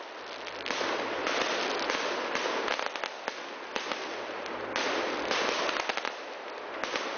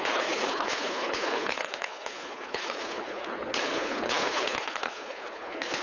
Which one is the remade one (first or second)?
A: second